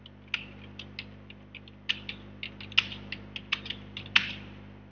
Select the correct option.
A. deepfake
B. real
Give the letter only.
B